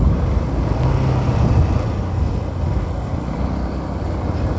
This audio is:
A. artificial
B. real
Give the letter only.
B